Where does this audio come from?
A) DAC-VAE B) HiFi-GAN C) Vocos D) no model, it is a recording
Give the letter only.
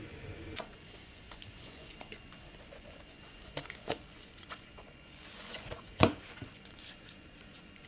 C